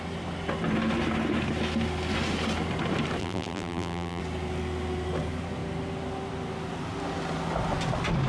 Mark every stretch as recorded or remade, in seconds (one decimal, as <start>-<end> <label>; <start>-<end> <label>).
0.0-3.2 recorded; 3.2-4.2 remade; 4.2-8.3 recorded